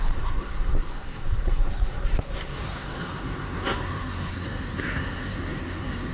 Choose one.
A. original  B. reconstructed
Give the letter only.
B